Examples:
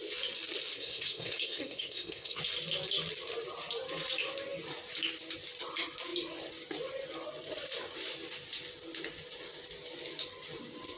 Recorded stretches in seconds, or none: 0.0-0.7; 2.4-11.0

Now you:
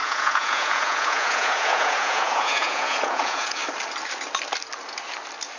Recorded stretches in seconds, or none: 3.6-5.6

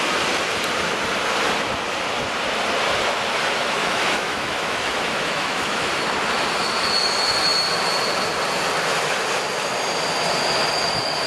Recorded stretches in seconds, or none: 0.0-3.8; 5.9-11.3

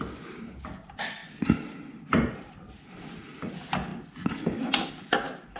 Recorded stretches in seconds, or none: 0.0-5.6

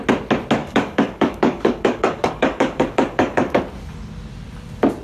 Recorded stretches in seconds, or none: 0.0-0.6; 3.6-5.0

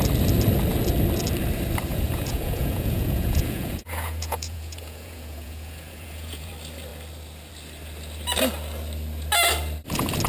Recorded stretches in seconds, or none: 0.0-1.9; 6.5-10.3

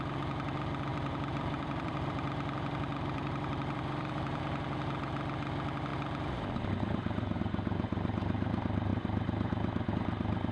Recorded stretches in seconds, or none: 0.0-0.9; 4.4-10.5

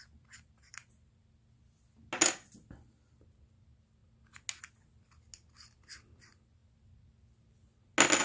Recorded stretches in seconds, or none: 0.0-8.2